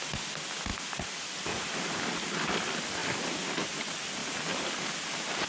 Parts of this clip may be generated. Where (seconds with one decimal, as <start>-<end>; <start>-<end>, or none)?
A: 0.7-2.5; 4.2-4.7